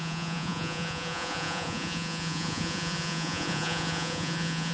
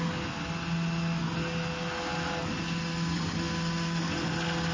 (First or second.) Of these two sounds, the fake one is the first